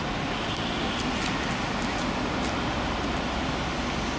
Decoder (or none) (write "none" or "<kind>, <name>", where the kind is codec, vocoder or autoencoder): none